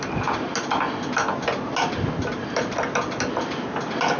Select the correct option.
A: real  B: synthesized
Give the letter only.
A